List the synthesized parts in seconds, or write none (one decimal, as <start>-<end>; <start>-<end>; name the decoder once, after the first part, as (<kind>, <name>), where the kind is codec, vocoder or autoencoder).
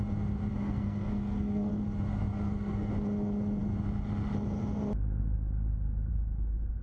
0.5-1.7 (codec, SNAC); 2.3-2.9